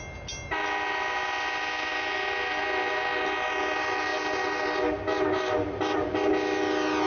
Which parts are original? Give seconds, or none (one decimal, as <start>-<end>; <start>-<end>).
0.0-7.1